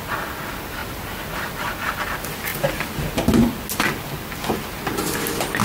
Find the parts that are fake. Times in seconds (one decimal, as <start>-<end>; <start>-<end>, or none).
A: none